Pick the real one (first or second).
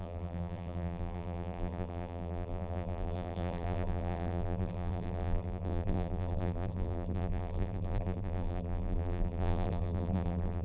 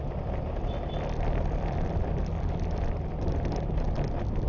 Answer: second